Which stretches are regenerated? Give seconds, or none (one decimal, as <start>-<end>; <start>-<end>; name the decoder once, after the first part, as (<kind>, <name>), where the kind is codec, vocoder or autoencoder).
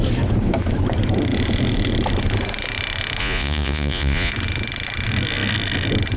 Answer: 3.2-4.3 (vocoder, Vocos)